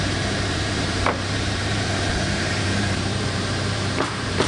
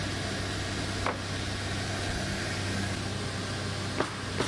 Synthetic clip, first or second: first